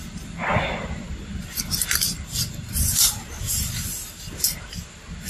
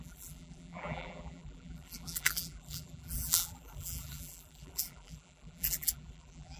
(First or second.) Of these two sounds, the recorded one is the first